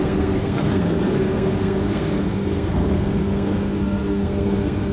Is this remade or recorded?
remade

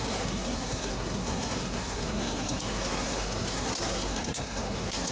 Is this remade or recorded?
remade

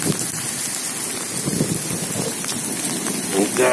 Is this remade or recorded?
recorded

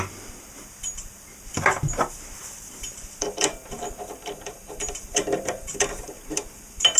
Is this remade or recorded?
remade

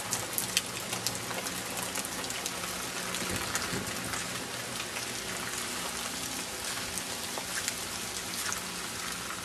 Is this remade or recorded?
recorded